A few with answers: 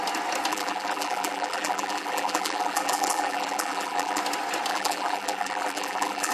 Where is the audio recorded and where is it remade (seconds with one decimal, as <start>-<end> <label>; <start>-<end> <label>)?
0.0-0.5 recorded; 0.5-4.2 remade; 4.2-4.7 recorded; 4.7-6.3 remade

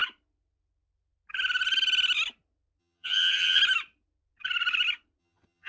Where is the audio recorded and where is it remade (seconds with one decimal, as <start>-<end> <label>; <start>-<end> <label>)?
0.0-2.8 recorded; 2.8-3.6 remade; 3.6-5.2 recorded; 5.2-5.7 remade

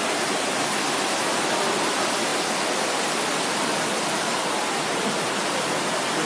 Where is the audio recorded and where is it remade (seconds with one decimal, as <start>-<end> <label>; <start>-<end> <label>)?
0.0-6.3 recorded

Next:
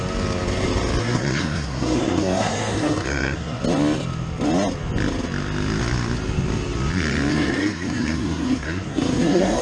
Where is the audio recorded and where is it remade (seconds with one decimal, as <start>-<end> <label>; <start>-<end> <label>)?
0.0-1.0 recorded; 1.0-3.6 remade; 3.6-7.3 recorded; 7.3-9.6 remade

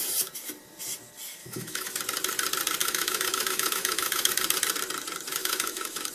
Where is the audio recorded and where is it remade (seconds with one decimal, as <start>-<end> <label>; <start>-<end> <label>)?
0.0-1.4 recorded; 1.4-2.0 remade; 2.0-2.8 recorded; 2.8-4.3 remade; 4.3-5.4 recorded; 5.4-6.1 remade